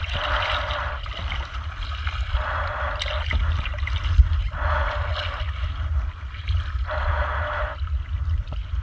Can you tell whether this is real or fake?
real